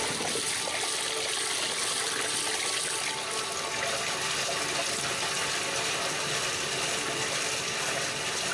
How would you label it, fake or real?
real